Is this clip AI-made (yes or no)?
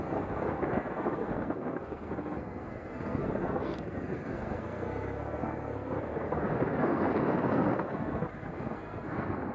yes